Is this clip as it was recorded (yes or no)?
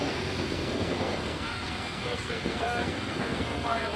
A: no